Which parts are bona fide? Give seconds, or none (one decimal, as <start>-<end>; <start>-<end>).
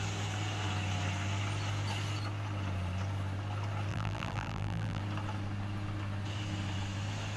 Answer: 0.0-3.9; 5.0-7.4